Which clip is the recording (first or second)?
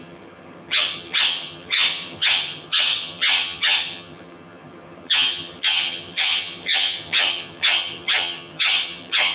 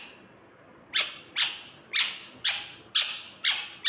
second